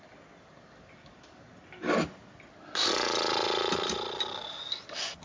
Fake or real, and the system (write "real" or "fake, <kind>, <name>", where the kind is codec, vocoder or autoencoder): real